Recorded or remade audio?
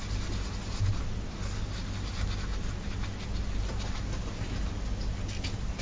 recorded